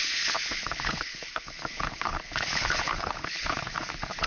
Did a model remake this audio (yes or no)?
yes